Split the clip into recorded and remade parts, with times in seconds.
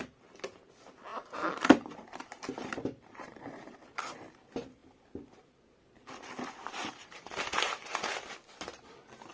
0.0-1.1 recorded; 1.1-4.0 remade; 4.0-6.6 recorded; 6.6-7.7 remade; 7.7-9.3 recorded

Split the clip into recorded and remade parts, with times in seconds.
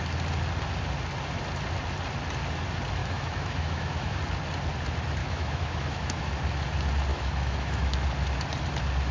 0.0-3.0 recorded; 3.0-4.2 remade; 4.2-5.2 recorded; 5.2-6.2 remade; 6.2-7.1 recorded; 7.1-7.9 remade; 7.9-9.1 recorded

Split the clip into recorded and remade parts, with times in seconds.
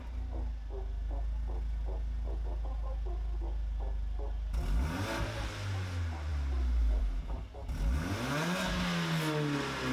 0.0-9.9 recorded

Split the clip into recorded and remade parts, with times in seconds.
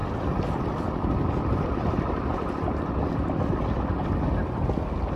0.0-5.2 recorded